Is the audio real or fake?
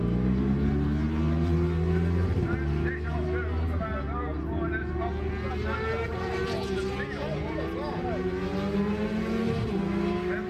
real